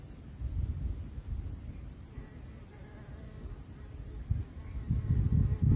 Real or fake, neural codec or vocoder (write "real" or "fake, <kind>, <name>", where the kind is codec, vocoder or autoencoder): real